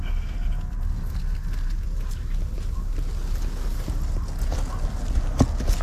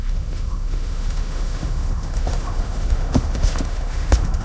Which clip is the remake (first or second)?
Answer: second